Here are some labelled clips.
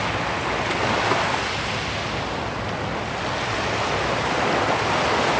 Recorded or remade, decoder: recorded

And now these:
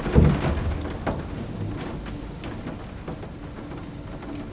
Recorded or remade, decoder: recorded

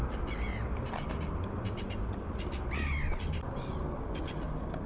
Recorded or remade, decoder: recorded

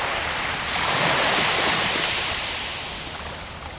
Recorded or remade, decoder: recorded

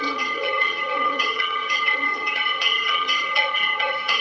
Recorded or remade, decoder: remade, vocoder, HiFi-GAN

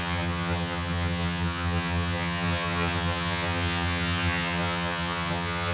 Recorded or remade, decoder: remade, vocoder, HiFi-GAN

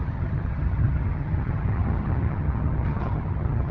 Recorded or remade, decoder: remade, vocoder, HiFi-GAN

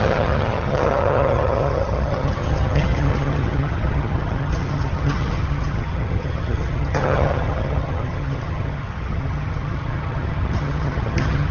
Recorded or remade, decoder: remade, vocoder, HiFi-GAN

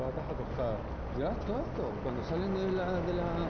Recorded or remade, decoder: recorded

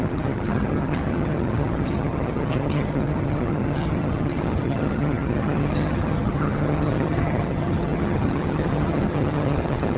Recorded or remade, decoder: remade, vocoder, HiFi-GAN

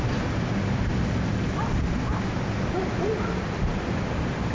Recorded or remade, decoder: recorded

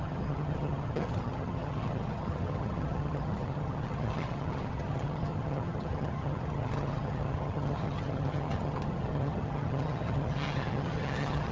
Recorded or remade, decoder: remade, vocoder, HiFi-GAN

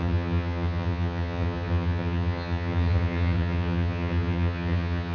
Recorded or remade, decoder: remade, vocoder, HiFi-GAN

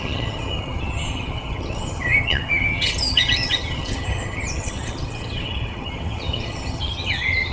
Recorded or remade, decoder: remade, vocoder, HiFi-GAN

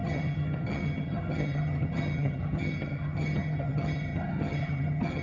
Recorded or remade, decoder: remade, vocoder, HiFi-GAN